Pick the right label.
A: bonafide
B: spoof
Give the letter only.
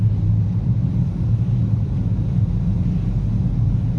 A